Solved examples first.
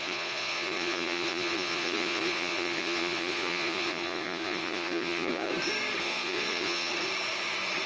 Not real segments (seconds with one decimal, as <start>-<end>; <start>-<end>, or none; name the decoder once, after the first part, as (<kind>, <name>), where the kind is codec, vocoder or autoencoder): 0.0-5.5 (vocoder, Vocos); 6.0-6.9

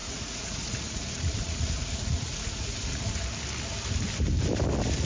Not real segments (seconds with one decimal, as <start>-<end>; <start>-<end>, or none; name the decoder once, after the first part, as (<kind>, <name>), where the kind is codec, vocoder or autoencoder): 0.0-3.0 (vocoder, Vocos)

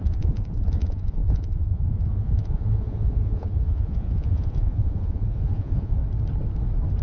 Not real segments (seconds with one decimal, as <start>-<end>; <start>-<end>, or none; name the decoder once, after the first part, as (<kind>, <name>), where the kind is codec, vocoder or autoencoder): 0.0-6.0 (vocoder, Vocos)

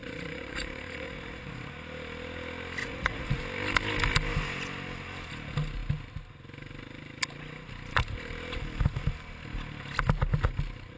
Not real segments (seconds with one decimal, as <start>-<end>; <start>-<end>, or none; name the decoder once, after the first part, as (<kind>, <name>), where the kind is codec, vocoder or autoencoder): 0.0-1.7 (vocoder, Vocos); 2.8-3.4

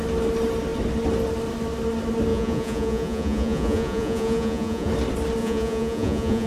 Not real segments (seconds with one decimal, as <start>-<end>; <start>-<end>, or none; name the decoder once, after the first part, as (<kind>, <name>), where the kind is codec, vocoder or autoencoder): 2.3-4.9 (vocoder, Vocos); 5.4-6.5

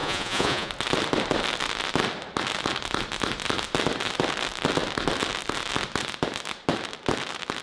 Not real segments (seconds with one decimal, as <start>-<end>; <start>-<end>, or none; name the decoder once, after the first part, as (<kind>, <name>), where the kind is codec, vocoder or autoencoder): 0.0-0.7 (vocoder, Vocos)

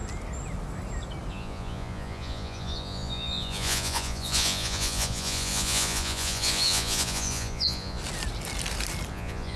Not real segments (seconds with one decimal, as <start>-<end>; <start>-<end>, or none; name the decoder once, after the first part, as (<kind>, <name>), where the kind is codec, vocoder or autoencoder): 1.3-8.0 (vocoder, Vocos); 9.1-9.6